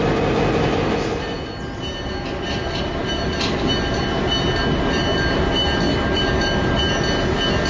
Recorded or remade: recorded